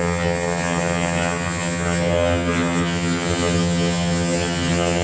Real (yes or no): no